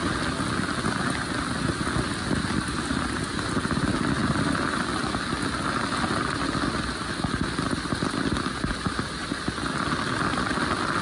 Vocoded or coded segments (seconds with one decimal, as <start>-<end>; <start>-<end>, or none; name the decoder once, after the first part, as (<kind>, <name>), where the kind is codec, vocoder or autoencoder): none